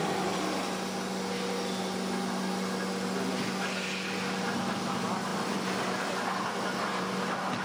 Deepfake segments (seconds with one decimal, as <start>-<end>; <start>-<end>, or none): none